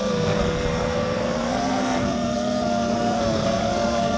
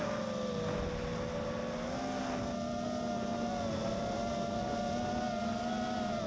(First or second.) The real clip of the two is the second